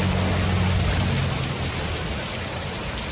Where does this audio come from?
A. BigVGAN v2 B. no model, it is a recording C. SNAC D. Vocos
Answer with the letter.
B